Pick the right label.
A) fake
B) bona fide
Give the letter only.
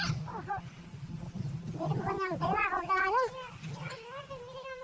B